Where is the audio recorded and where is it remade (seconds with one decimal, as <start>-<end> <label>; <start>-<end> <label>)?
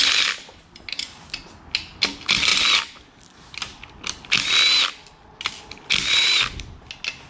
0.0-7.3 recorded